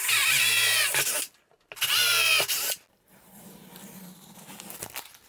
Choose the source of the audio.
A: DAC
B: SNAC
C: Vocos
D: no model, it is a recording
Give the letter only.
D